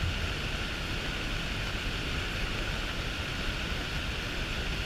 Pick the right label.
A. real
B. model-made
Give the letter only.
A